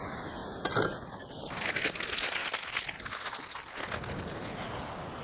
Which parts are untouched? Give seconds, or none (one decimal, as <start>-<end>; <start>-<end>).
0.0-5.2